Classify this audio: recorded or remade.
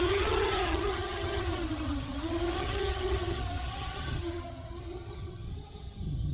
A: remade